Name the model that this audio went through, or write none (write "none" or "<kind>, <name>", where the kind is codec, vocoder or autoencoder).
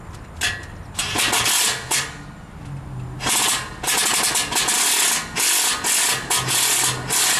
none